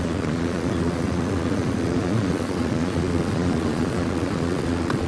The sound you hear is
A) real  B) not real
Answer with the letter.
B